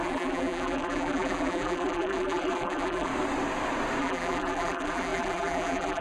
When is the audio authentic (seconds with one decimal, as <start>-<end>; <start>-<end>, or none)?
3.1-4.0